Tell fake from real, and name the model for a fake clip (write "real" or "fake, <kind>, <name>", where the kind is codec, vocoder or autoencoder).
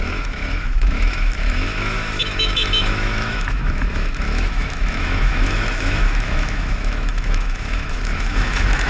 fake, autoencoder, DAC-VAE